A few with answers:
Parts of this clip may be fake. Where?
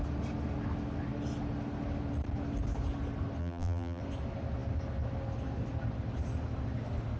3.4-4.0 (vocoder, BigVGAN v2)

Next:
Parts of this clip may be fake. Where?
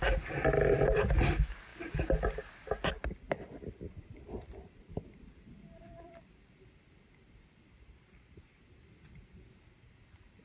none